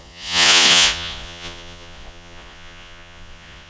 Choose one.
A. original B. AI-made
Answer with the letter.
B